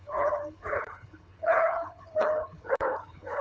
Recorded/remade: remade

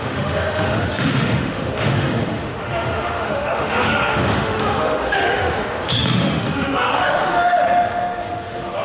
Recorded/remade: remade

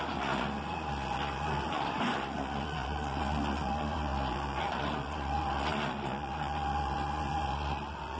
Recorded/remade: remade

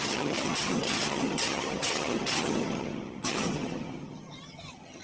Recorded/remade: remade